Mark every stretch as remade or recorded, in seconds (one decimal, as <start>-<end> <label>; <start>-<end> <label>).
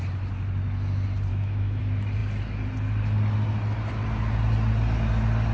0.0-1.3 recorded; 1.3-1.8 remade; 1.8-5.5 recorded